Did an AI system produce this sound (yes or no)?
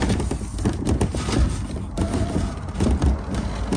no